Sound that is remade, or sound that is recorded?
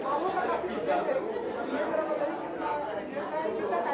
recorded